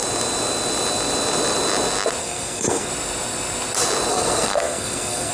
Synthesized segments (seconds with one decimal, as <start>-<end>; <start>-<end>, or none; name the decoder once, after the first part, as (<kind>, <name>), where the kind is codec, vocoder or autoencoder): 2.2-2.9 (codec, SNAC); 4.1-5.3

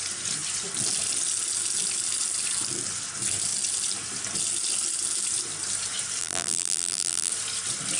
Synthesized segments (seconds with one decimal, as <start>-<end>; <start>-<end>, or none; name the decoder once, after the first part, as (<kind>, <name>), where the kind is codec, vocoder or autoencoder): 6.2-7.3 (vocoder, BigVGAN v2)

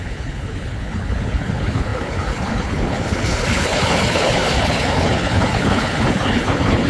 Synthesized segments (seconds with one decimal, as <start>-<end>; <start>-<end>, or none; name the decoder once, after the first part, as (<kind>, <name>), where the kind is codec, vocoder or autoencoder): 0.0-6.9 (codec, HILCodec)

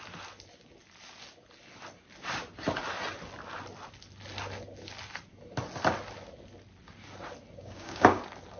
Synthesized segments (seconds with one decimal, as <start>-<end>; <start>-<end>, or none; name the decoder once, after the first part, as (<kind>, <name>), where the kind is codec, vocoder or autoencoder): 7.6-8.2 (codec, DAC)

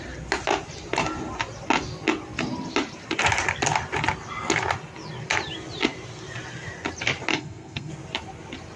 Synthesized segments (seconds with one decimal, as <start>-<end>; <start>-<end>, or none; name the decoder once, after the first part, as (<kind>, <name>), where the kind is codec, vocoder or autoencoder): 7.3-7.9 (codec, SNAC)

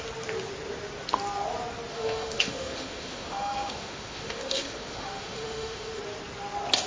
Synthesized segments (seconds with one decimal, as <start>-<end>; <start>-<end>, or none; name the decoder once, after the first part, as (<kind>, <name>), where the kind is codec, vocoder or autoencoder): 1.9-6.0 (autoencoder, DAC-VAE)